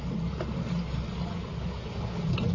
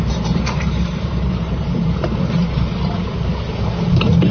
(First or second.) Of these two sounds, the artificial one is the second